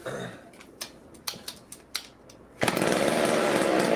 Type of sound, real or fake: real